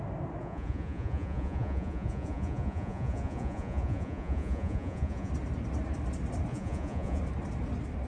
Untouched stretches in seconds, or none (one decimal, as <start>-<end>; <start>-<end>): 0.0-0.4; 5.3-6.5; 7.2-8.1